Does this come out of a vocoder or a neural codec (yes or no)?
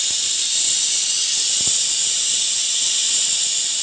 no